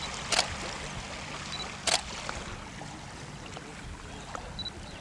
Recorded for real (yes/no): yes